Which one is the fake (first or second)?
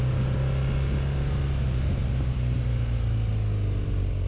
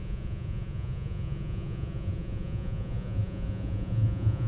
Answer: second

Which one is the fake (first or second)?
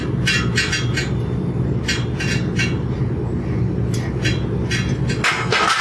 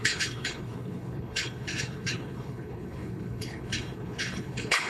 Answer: second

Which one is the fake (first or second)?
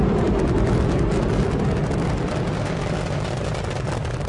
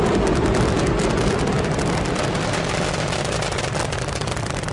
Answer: second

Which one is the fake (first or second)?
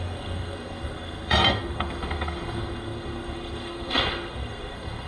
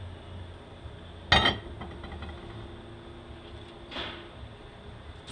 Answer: first